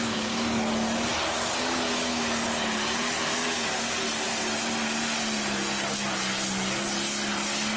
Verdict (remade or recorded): recorded